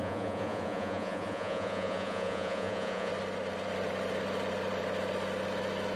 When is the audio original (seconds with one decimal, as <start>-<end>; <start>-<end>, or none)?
3.1-6.0